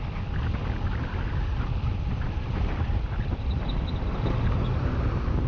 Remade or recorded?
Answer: recorded